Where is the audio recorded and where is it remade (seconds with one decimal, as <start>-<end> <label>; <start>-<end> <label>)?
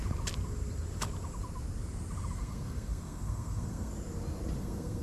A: 0.0-2.4 recorded; 2.4-3.9 remade; 3.9-4.6 recorded; 4.6-5.0 remade